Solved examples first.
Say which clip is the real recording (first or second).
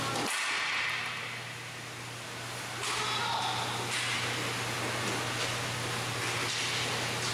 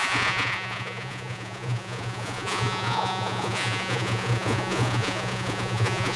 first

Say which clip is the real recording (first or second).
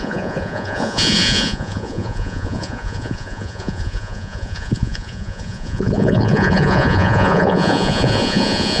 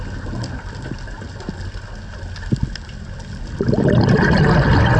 second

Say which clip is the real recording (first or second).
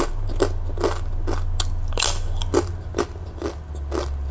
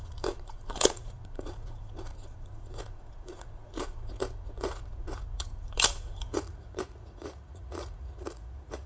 first